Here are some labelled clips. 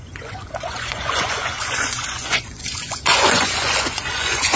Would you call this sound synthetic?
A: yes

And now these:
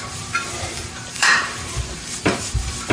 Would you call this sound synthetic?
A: yes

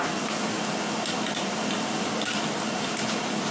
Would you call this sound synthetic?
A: no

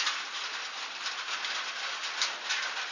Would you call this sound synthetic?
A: no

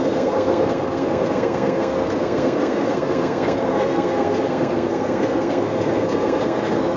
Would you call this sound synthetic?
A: yes